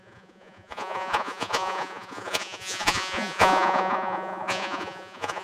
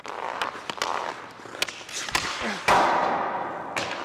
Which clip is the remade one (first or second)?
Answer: first